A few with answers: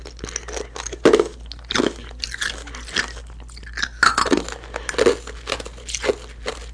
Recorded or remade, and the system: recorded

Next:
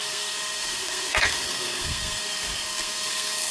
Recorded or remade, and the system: remade, codec, SNAC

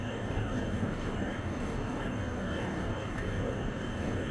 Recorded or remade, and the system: remade, codec, DAC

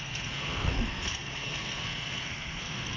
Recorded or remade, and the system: remade, codec, SNAC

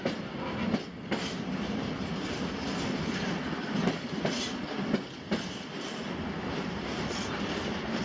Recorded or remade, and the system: recorded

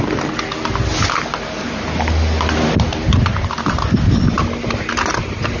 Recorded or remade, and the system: recorded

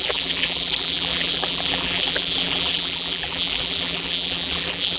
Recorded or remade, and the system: remade, vocoder, BigVGAN v2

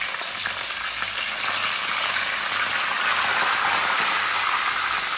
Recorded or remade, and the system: recorded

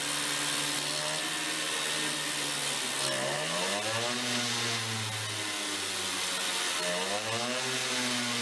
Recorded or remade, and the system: recorded